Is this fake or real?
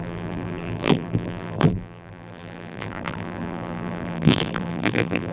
fake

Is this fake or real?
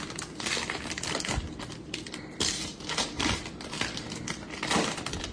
real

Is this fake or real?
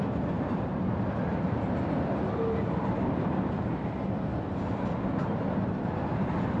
real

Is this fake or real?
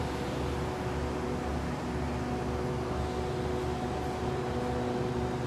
real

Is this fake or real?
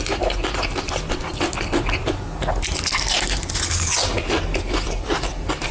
real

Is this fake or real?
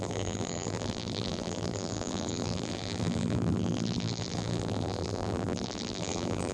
fake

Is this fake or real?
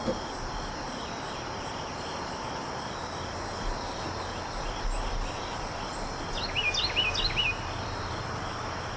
real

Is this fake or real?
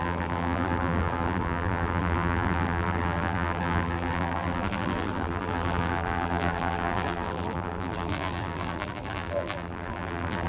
fake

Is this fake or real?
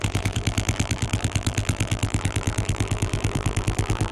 fake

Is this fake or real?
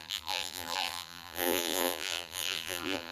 fake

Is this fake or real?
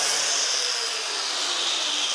real